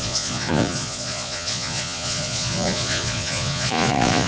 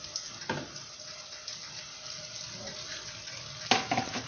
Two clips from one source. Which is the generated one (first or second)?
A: first